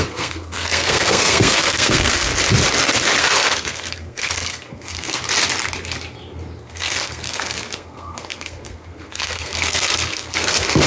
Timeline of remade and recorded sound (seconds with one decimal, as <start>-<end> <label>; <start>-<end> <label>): 0.0-2.3 remade; 2.3-3.2 recorded; 3.2-5.2 remade; 5.2-6.6 recorded; 6.6-10.9 remade